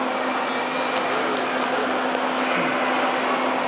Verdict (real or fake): real